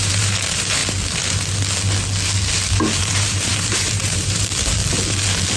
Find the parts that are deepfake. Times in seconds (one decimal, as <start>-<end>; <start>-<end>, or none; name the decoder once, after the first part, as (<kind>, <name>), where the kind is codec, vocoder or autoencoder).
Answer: 0.0-0.8 (vocoder, BigVGAN v2); 3.0-4.8